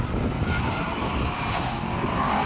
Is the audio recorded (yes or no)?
yes